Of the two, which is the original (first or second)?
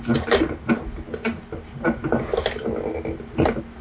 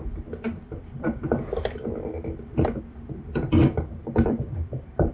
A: first